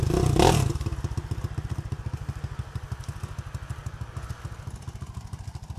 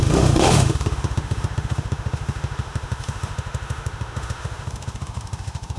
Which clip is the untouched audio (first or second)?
first